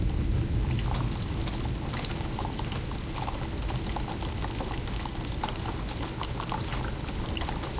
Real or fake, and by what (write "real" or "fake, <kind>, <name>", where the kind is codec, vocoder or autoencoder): real